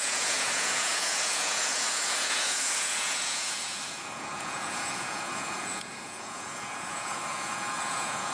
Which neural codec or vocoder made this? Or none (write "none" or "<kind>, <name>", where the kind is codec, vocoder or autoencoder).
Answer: vocoder, Vocos